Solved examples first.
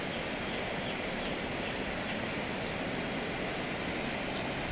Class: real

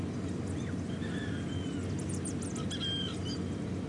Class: real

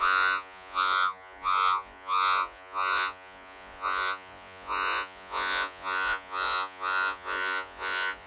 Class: fake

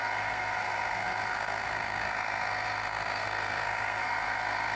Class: fake